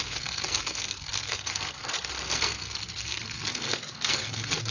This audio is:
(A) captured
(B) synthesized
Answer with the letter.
B